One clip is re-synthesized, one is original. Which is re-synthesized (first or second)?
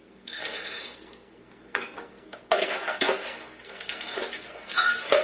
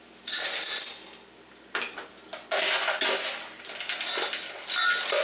first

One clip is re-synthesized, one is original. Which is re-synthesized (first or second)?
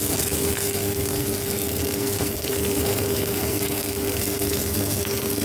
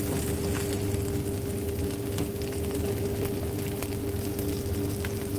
first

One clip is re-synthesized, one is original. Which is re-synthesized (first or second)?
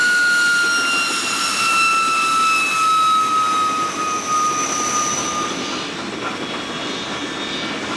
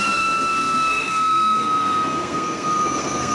second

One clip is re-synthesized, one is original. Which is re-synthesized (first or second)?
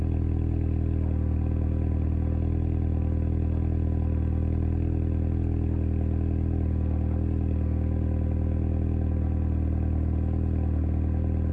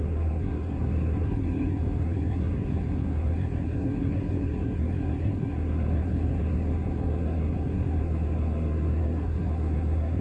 second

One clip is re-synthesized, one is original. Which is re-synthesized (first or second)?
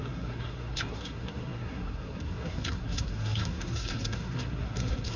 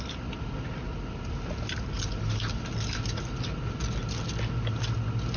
first